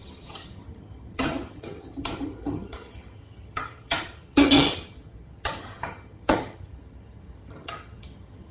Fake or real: fake